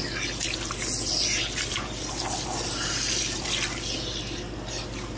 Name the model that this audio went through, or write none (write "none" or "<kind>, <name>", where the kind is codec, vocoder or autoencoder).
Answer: none